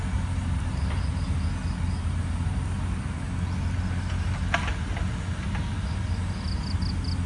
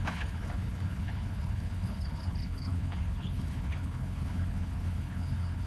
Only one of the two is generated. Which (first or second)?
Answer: second